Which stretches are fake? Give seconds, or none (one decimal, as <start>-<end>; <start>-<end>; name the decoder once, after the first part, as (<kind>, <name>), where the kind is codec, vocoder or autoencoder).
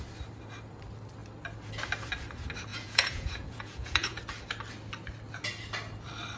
2.7-4.2 (vocoder, Vocos)